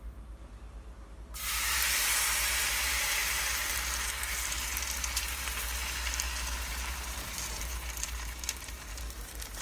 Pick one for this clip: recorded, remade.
remade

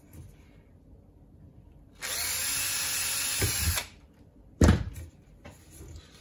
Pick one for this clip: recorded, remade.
remade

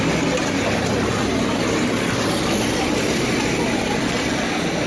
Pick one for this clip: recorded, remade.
recorded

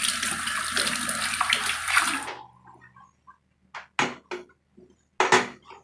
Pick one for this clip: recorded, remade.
recorded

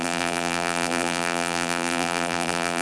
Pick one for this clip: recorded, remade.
remade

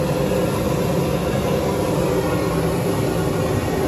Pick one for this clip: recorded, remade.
recorded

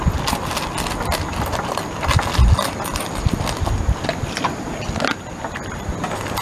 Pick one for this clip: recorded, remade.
recorded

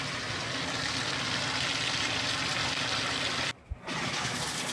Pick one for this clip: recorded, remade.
recorded